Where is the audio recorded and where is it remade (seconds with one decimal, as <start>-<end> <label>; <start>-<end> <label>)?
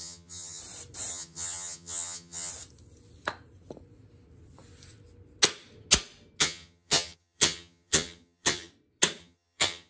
0.0-0.6 remade; 0.6-1.1 recorded; 1.1-2.5 remade; 2.5-6.4 recorded; 6.4-8.7 remade; 8.7-9.2 recorded; 9.2-9.9 remade